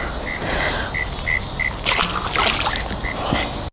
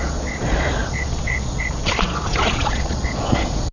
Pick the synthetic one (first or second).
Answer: second